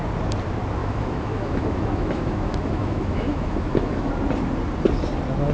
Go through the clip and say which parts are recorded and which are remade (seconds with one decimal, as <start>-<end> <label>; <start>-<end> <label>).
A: 0.0-0.8 recorded; 0.8-4.1 remade; 4.1-5.5 recorded